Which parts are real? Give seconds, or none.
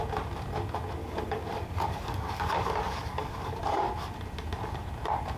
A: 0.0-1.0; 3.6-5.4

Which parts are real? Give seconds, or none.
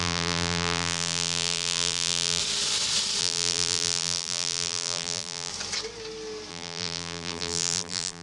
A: 2.4-3.2; 5.5-6.5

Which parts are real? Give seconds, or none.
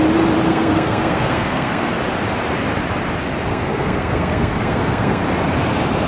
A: 0.0-0.5; 1.9-3.5; 5.2-6.1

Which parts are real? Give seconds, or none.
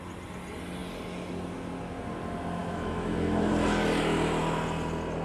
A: 0.0-2.6; 3.5-5.2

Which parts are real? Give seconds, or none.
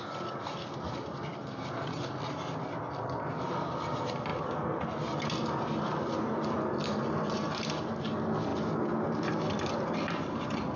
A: 0.0-10.8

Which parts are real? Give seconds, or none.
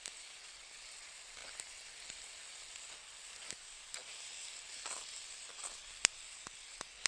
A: 0.0-7.1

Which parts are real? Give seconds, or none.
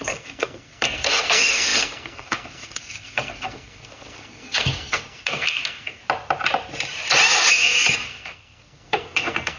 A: 6.0-7.5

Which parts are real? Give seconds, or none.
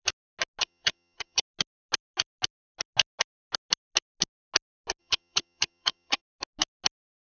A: 0.0-0.6; 1.4-5.0; 6.2-7.3